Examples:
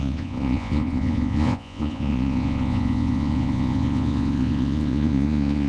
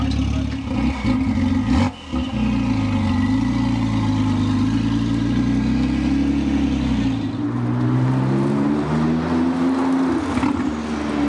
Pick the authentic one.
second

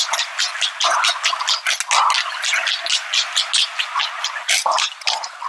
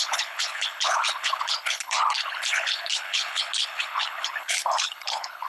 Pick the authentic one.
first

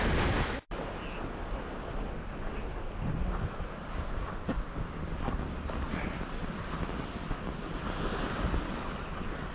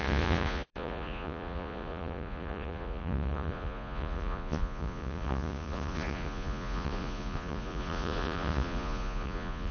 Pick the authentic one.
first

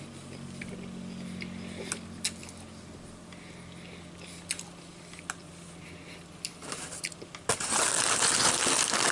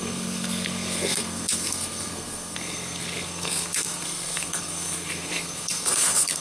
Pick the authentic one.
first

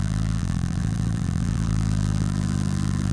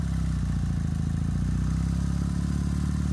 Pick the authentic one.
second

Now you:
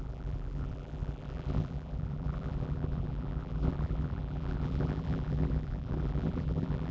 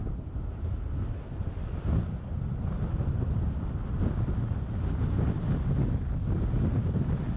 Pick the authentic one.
second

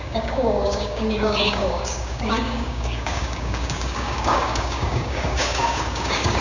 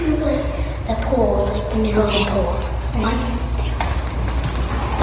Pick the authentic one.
second